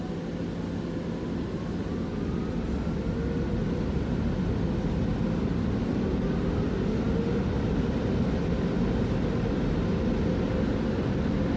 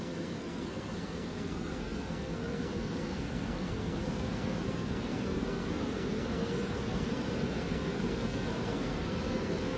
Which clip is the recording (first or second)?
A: first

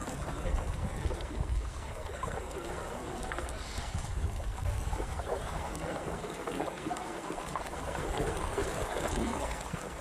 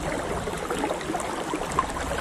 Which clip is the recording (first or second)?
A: second